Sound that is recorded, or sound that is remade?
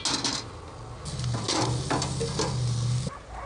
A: recorded